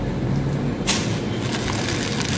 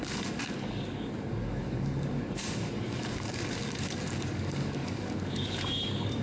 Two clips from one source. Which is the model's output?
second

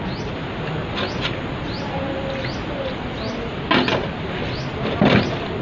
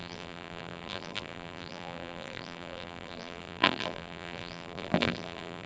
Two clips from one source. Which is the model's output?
second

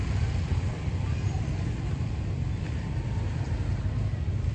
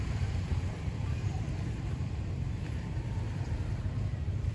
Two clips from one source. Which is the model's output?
second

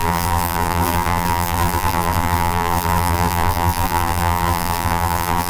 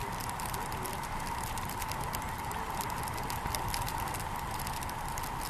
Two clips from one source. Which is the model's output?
first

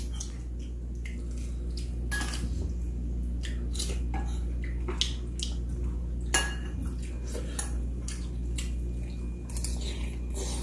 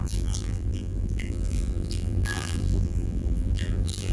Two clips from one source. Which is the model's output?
second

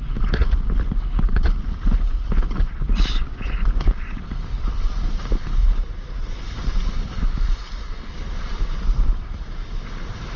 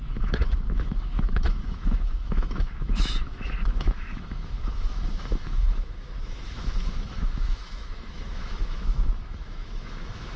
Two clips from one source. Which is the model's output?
second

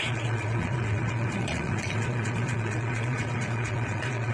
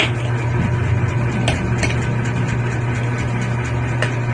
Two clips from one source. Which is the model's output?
first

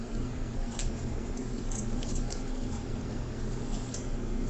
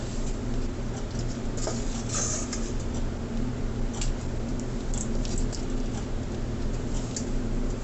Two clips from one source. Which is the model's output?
first